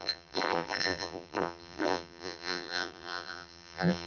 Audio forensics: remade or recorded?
remade